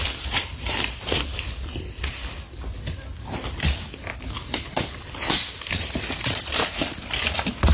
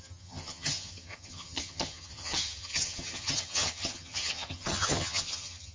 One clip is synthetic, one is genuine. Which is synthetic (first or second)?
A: second